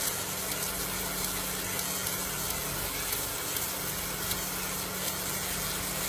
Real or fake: real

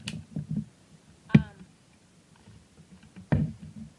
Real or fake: real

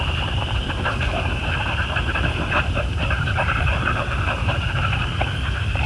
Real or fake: fake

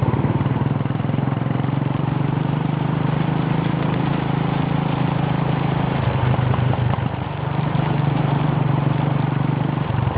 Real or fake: fake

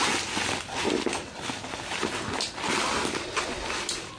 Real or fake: real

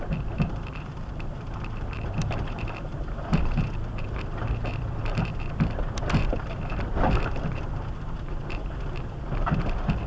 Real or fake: fake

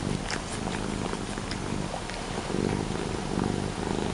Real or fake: fake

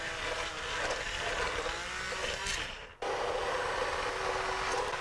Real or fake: real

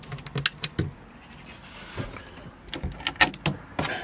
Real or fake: real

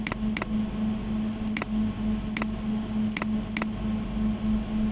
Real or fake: real